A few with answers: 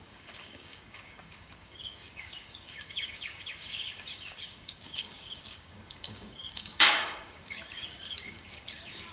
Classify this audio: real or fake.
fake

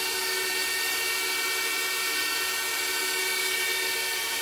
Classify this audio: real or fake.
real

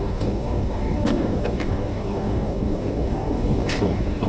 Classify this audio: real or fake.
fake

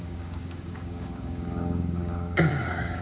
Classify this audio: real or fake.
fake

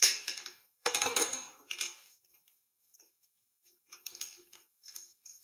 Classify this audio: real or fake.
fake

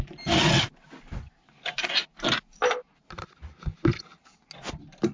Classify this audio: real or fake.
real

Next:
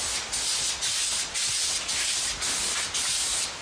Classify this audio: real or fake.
real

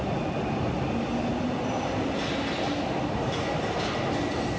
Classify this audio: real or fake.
real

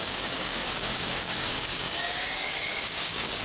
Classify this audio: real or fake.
fake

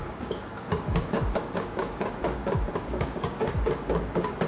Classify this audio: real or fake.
fake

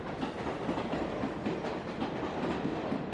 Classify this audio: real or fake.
real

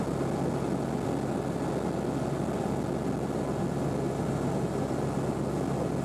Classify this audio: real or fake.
real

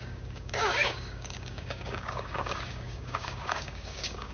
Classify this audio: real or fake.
fake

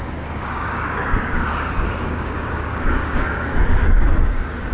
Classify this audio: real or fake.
fake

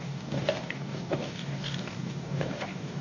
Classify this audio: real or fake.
fake